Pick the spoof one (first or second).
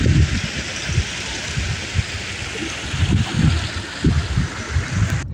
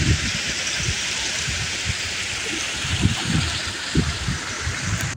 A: second